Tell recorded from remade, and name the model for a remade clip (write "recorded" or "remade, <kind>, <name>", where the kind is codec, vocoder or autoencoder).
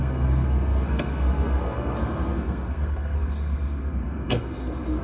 remade, codec, SNAC